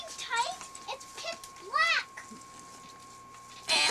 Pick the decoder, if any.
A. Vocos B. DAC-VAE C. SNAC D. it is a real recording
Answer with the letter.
D